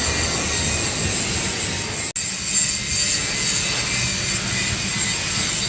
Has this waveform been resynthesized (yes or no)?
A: no